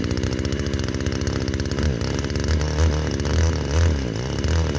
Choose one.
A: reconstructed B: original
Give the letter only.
B